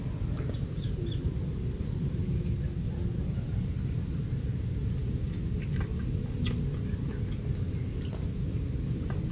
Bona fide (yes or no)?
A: yes